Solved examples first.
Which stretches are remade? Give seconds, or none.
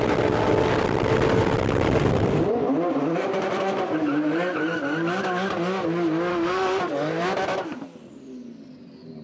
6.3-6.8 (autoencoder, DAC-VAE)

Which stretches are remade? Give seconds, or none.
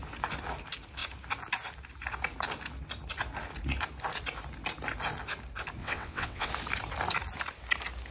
5.8-6.5 (vocoder, WaveNeXt)